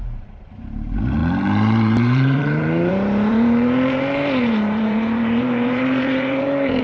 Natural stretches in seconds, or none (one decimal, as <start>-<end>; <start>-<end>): none